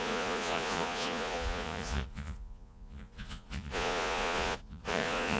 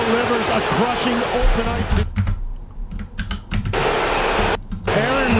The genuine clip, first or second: second